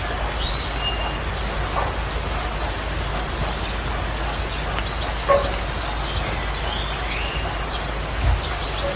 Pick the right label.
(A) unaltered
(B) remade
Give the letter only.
A